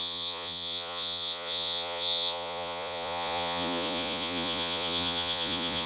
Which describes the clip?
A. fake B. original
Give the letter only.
A